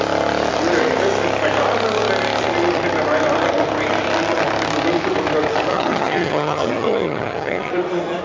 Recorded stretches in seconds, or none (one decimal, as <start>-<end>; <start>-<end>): 0.0-5.7; 7.7-8.2